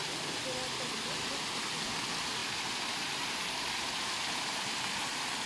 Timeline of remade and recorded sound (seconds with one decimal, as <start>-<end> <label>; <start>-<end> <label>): 0.0-5.5 recorded